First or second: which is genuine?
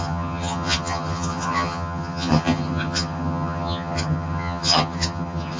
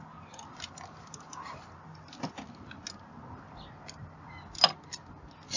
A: second